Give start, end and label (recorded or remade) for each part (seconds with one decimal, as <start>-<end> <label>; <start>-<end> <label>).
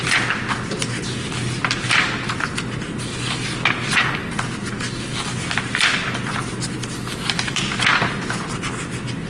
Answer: 0.0-9.3 recorded